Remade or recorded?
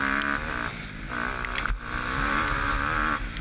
recorded